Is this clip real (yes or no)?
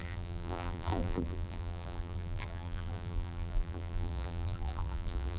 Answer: no